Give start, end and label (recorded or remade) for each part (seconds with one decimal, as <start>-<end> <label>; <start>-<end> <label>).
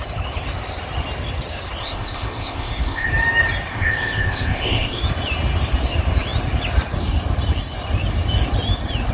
0.0-1.8 recorded; 1.8-3.1 remade; 3.1-3.7 recorded; 3.7-5.0 remade; 5.0-9.1 recorded